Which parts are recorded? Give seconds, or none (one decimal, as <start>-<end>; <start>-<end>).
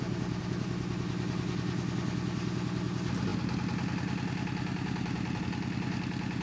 0.0-6.4